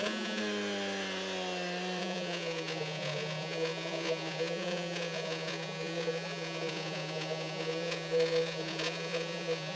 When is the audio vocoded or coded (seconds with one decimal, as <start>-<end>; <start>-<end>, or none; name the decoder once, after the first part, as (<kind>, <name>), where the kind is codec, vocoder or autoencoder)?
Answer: 0.0-0.4 (vocoder, Vocos); 2.0-9.8